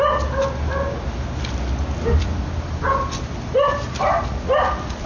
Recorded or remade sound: recorded